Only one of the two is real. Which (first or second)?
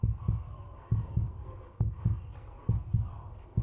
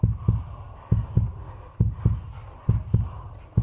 second